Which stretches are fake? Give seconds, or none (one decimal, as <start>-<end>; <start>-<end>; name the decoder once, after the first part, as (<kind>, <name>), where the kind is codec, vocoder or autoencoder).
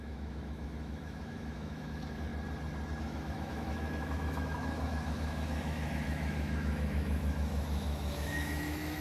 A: 0.0-2.3 (autoencoder, DAC-VAE); 3.0-9.0